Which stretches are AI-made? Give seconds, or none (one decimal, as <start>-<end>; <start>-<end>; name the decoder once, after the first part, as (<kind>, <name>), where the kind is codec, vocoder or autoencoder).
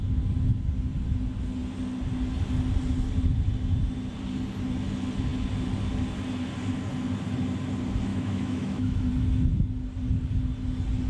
8.1-9.1 (autoencoder, DAC-VAE)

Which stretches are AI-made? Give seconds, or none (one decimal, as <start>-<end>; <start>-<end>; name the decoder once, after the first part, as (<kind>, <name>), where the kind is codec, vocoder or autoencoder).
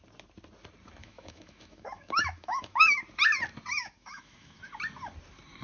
1.0-3.0 (autoencoder, DAC-VAE); 3.8-4.6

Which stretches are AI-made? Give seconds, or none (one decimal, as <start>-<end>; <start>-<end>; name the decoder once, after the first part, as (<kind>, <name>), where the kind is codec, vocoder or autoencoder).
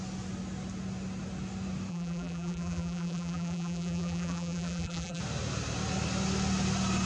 1.9-5.2 (vocoder, BigVGAN v2)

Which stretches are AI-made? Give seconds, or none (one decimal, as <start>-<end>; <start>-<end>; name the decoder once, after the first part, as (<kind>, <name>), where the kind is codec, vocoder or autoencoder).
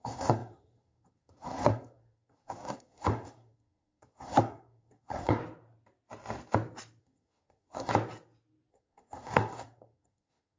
0.0-5.4 (codec, SNAC); 7.0-7.9; 8.7-10.6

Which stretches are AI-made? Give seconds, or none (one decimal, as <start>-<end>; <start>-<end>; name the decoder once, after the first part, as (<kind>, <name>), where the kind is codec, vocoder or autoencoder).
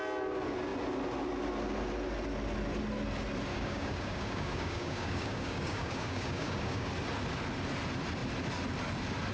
3.5-6.9 (codec, DAC)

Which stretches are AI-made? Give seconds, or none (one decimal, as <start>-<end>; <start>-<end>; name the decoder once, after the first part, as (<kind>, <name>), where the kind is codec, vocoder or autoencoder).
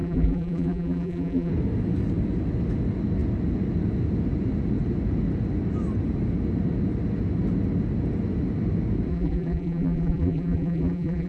0.0-1.5 (vocoder, BigVGAN v2); 9.1-11.3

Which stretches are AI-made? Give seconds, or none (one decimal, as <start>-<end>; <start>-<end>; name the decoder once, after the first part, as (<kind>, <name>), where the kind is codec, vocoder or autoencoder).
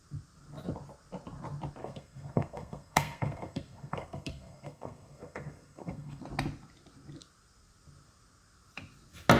1.8-6.2 (codec, SNAC)